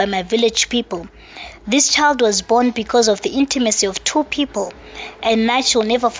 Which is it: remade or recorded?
recorded